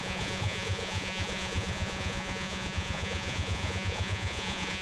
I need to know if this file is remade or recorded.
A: remade